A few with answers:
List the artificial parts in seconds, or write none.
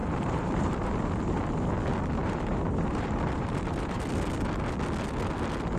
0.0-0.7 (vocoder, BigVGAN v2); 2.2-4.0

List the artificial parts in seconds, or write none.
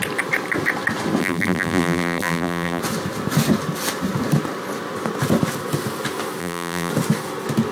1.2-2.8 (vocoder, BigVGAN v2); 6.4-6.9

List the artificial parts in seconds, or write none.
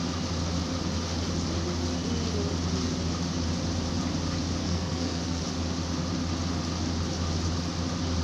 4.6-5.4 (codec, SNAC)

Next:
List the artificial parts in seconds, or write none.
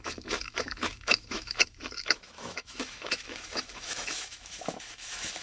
0.0-5.4 (autoencoder, DAC-VAE)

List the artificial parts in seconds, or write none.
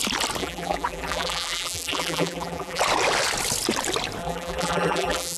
0.4-2.8 (vocoder, BigVGAN v2); 4.2-5.4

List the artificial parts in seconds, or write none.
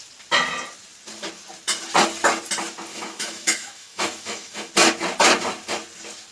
2.9-4.7 (autoencoder, DAC-VAE)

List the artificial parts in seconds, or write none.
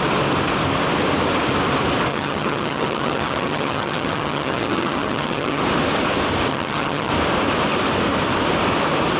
2.1-5.6 (vocoder, HiFi-GAN); 6.5-7.1